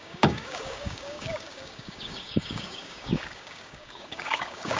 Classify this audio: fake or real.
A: fake